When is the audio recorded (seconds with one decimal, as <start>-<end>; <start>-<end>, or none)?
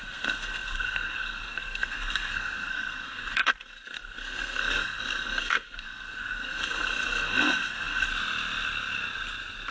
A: 8.1-9.7